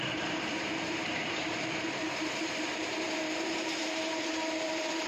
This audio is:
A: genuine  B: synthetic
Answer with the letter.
B